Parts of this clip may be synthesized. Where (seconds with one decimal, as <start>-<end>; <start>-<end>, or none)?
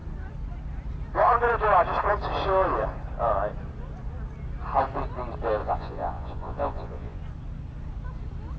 5.6-7.2